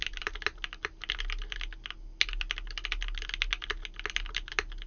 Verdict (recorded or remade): recorded